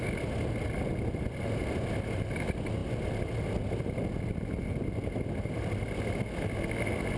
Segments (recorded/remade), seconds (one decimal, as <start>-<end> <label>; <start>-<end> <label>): 0.0-7.2 recorded